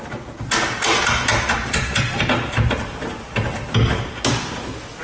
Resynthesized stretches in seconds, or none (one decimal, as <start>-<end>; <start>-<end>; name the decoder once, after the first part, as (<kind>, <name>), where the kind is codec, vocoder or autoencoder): none